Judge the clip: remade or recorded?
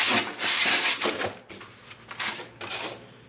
recorded